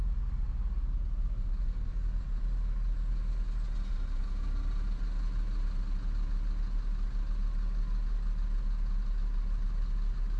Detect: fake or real real